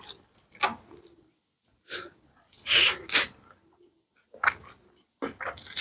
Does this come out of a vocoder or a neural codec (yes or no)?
no